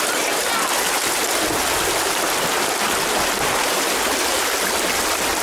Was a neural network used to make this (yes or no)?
no